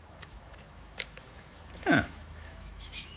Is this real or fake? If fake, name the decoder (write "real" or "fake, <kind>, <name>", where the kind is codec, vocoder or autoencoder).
fake, autoencoder, DAC-VAE